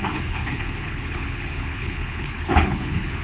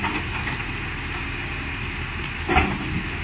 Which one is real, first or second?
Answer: second